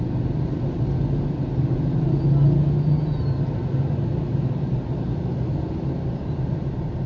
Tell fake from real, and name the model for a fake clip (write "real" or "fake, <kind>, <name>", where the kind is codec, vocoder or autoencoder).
real